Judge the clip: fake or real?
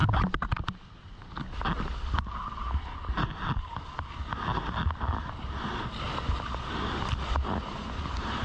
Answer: real